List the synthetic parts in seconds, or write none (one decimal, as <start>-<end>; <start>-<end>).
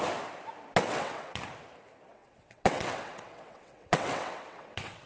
0.8-1.4; 2.1-5.1